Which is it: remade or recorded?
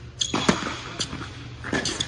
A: recorded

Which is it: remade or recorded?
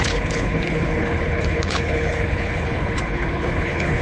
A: remade